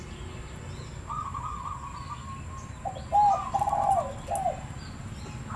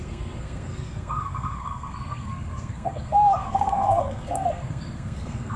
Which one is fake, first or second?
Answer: second